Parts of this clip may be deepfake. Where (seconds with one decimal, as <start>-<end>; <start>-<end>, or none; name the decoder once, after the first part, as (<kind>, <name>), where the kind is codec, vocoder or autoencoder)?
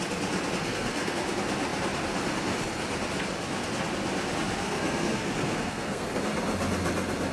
0.6-1.2 (codec, SNAC); 4.6-6.2